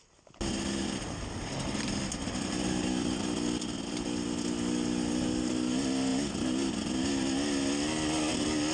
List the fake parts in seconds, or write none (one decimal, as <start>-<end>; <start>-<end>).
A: none